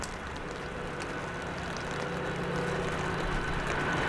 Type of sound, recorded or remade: recorded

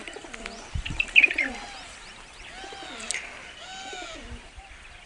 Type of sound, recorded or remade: recorded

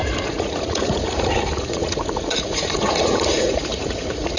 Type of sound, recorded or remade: remade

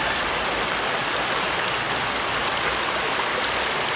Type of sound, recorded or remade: recorded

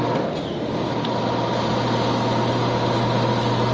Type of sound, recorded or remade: recorded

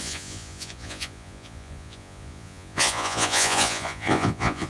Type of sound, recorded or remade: remade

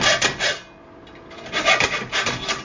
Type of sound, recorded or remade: recorded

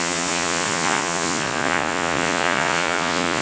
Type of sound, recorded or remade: remade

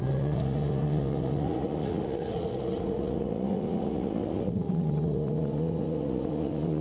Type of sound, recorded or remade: remade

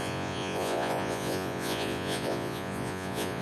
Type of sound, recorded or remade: remade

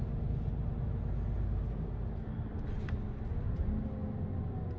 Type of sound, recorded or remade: recorded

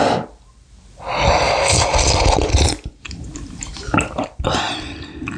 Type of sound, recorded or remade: recorded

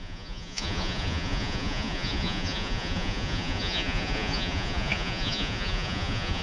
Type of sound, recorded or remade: remade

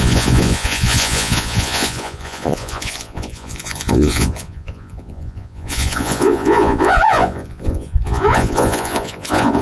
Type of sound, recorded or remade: remade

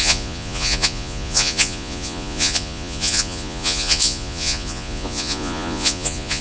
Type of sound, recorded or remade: remade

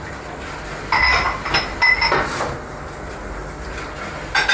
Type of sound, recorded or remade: recorded